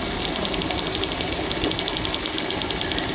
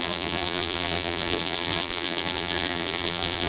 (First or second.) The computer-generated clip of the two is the second